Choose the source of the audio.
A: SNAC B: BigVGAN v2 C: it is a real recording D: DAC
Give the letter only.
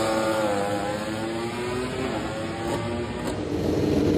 C